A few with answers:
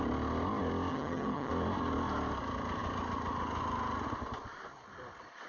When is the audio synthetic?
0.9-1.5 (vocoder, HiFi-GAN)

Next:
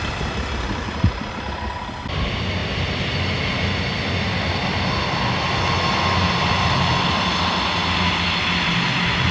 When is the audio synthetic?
0.8-1.3 (vocoder, Vocos)

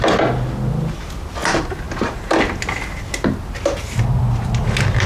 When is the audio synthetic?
none

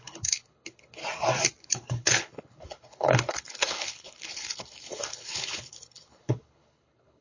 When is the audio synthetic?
0.0-1.0 (codec, HILCodec); 1.6-7.2

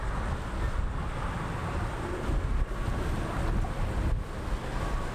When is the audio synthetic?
none